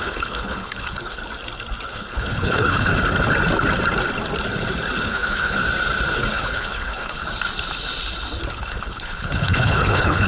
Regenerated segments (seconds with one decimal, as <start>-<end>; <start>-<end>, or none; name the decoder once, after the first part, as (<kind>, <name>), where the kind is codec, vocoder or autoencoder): 0.0-1.2 (codec, HILCodec); 1.9-2.9; 5.0-5.6; 6.3-7.2; 8.5-10.3